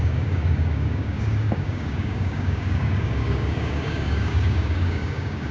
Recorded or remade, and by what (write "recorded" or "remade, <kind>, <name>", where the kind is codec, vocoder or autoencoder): remade, codec, DAC